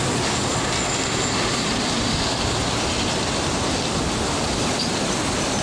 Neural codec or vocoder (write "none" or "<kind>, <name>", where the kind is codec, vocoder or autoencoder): none